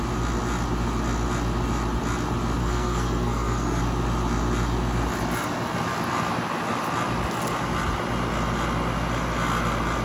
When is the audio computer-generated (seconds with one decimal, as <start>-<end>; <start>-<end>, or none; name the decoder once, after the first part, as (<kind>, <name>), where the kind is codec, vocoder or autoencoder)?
2.6-3.8 (codec, SNAC)